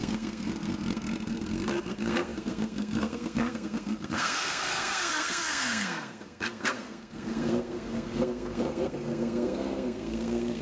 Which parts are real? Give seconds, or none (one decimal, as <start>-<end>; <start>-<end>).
none